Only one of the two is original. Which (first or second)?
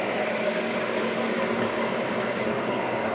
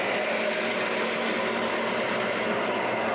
second